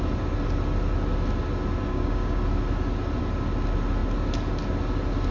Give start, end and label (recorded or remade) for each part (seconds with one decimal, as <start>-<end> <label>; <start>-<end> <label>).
0.0-1.9 recorded; 1.9-2.4 remade; 2.4-5.3 recorded